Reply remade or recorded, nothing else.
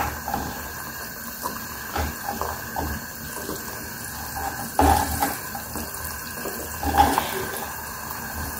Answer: recorded